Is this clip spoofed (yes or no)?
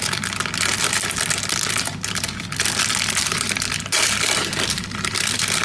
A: no